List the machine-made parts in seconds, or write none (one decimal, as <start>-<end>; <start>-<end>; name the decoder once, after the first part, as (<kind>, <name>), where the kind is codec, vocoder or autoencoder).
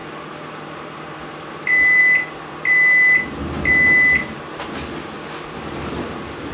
none